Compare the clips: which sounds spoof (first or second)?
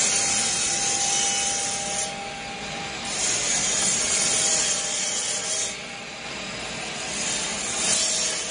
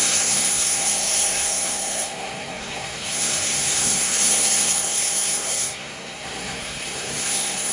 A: second